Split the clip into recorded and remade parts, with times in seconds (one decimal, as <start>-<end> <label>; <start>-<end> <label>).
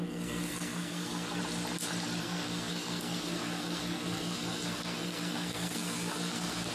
0.0-1.4 remade; 1.4-2.2 recorded; 2.2-6.7 remade